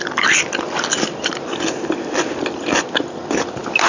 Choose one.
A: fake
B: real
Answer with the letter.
B